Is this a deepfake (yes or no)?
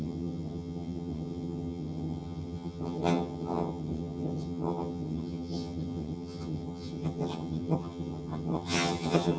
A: yes